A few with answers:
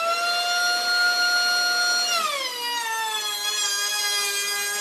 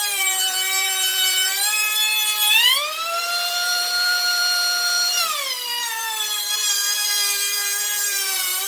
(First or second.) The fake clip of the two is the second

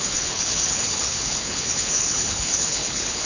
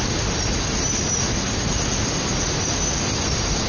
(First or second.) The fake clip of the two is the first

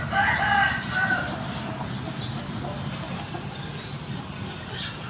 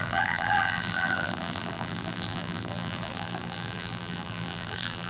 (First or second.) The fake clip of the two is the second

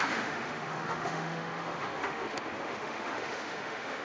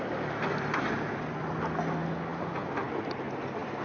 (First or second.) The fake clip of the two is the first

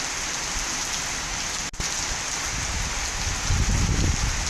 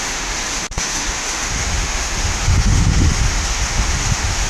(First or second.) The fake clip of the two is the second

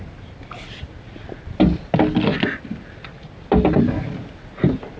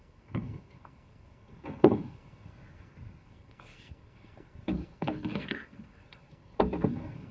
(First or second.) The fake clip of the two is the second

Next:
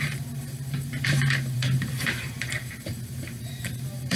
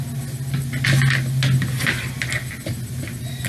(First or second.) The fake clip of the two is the first